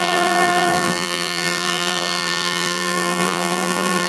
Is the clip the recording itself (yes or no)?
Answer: no